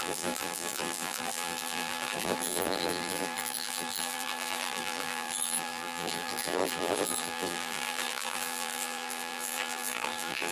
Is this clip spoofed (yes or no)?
yes